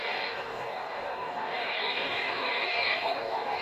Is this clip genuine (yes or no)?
no